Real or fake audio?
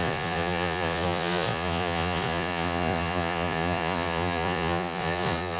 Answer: fake